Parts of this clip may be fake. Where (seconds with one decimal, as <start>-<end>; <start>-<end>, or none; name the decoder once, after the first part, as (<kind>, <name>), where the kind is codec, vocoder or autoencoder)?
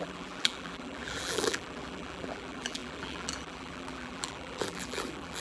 0.0-5.4 (vocoder, BigVGAN v2)